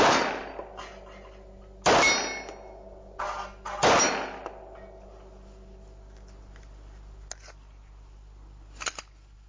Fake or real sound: real